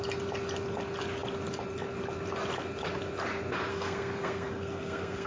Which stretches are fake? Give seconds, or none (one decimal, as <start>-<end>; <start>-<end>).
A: 3.7-5.3